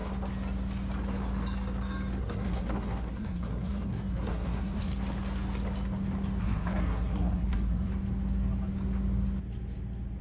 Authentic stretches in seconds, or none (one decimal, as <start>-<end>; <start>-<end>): 0.0-2.2; 4.9-6.4; 7.9-10.2